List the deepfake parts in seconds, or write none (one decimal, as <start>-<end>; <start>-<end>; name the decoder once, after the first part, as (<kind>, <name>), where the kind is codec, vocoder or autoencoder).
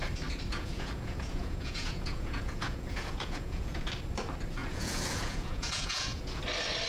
0.5-3.8 (vocoder, Vocos); 4.6-6.4